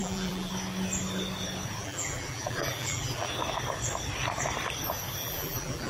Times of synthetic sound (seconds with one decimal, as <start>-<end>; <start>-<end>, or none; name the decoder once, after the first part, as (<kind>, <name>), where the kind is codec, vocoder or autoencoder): 0.0-0.5 (vocoder, BigVGAN v2); 1.8-3.3; 5.2-5.9

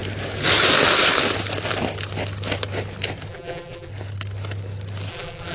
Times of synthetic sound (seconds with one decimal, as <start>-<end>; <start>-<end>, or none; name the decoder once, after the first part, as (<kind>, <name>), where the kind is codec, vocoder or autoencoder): 3.3-3.9 (vocoder, BigVGAN v2); 5.1-5.5

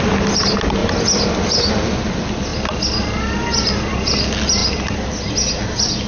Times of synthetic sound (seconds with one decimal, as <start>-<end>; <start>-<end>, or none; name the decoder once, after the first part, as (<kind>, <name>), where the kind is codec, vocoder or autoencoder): none

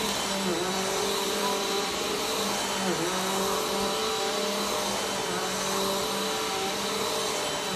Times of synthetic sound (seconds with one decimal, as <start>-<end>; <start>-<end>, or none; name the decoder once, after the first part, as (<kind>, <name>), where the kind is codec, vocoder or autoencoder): 0.5-2.1 (vocoder, BigVGAN v2)

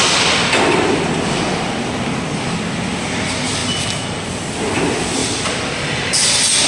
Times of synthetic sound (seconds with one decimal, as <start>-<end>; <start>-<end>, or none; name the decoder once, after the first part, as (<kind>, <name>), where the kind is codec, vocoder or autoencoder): 5.2-6.7 (vocoder, BigVGAN v2)

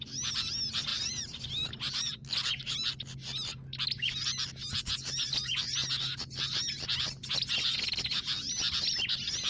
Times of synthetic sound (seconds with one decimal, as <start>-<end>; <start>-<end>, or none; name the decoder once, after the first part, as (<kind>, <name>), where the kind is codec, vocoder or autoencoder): 0.9-2.1 (vocoder, BigVGAN v2)